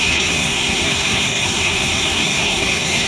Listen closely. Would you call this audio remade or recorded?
remade